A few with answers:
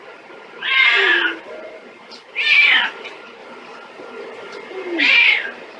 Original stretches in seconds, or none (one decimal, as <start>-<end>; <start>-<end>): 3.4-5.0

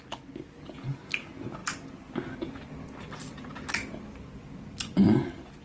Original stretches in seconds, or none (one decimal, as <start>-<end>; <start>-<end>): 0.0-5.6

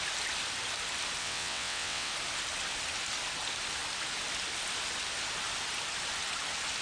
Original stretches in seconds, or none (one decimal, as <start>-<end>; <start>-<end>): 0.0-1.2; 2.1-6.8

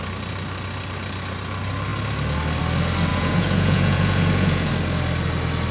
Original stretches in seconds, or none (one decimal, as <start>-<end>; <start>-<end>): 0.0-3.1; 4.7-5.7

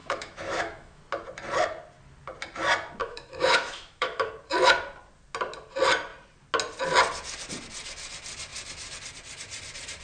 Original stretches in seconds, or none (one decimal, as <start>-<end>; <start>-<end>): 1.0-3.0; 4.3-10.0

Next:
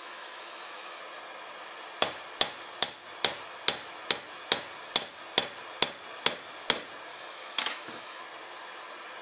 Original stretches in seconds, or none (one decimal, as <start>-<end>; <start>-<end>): 1.0-7.1; 8.2-9.2

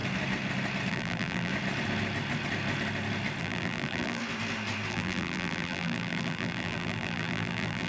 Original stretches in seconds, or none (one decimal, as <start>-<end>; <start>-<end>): 0.0-0.9; 1.5-3.4; 4.2-4.9

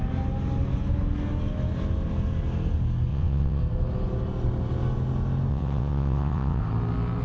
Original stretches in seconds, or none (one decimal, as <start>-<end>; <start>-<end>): 0.0-3.1; 3.6-5.5; 6.6-7.2